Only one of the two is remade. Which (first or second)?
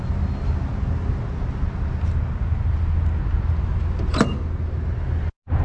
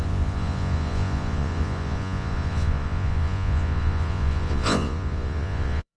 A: second